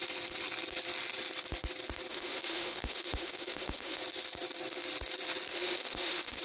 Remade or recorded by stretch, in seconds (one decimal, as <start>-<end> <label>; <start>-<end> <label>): 0.0-2.1 recorded; 2.1-4.0 remade; 4.0-5.5 recorded; 5.5-6.4 remade